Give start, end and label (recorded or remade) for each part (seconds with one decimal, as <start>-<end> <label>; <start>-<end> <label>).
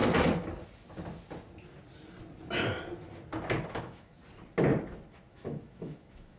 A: 0.0-3.8 recorded; 3.8-4.2 remade; 4.2-5.3 recorded; 5.3-6.4 remade